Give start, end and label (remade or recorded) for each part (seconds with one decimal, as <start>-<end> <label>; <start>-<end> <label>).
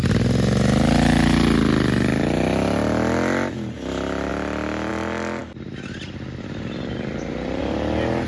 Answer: 0.0-8.3 recorded